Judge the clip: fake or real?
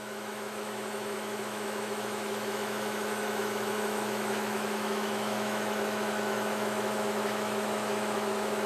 fake